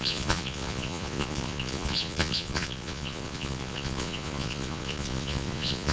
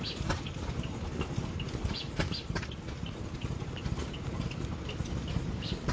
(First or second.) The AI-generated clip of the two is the first